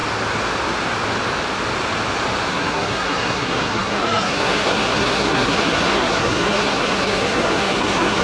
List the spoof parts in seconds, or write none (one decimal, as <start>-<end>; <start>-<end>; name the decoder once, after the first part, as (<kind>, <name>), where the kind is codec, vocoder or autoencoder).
2.5-8.2 (codec, SNAC)